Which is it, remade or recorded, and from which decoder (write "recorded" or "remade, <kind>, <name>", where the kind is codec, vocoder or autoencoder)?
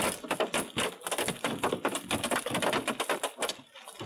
recorded